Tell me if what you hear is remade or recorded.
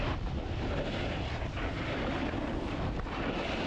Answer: recorded